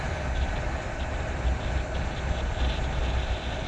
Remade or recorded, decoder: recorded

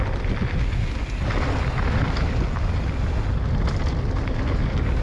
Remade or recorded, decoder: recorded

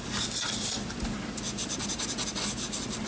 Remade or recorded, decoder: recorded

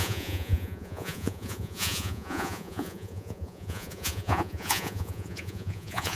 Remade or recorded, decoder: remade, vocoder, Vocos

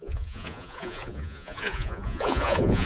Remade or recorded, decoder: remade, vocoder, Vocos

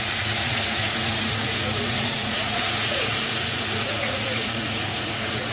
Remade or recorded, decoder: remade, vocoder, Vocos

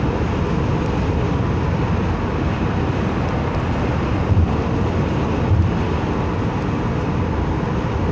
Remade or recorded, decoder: recorded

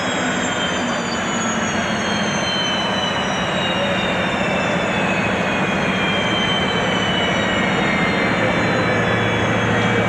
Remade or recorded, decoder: recorded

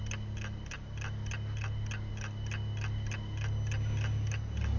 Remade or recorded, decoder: recorded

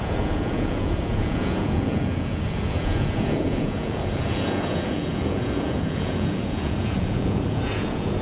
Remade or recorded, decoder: remade, vocoder, Vocos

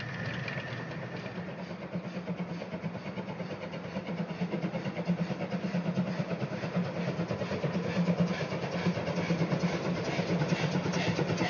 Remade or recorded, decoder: recorded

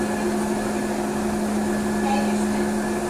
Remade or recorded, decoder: recorded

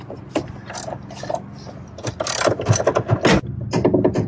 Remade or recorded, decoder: recorded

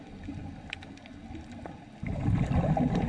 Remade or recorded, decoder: recorded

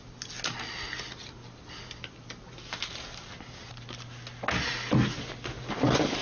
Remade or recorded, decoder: recorded